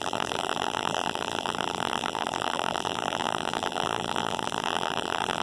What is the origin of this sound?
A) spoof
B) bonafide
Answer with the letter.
A